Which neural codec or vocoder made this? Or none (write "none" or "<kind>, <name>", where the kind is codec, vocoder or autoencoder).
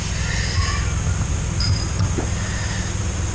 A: none